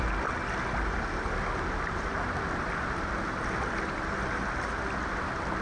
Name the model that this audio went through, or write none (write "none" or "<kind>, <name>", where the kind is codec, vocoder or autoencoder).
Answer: none